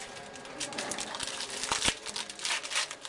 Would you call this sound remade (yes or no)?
no